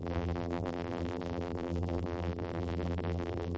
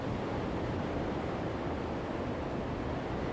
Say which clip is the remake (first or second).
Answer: first